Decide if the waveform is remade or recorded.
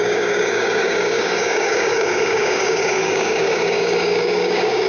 remade